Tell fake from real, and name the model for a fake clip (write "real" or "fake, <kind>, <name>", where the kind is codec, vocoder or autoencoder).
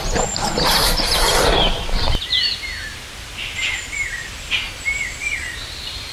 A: real